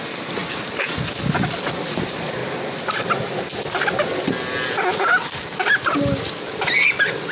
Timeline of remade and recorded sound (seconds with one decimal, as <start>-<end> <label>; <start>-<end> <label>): 0.0-7.3 recorded